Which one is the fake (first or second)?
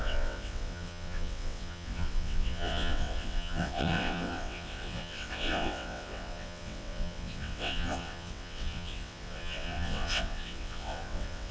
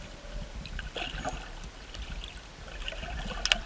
first